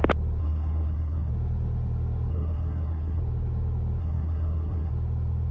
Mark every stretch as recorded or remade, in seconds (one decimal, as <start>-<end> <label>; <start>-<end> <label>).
0.0-0.4 recorded; 0.4-1.3 remade; 1.3-2.3 recorded; 2.3-3.2 remade; 3.2-4.0 recorded; 4.0-4.9 remade; 4.9-5.5 recorded